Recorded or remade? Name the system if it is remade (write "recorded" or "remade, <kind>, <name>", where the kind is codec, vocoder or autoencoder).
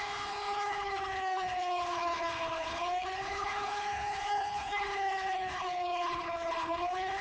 remade, codec, HILCodec